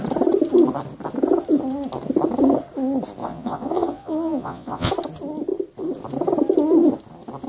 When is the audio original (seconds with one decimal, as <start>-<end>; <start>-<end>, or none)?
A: 0.0-3.2; 4.9-7.5